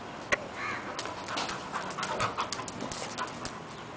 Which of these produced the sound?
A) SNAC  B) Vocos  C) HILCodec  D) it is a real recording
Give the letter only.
D